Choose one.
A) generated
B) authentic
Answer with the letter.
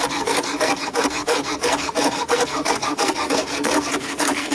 A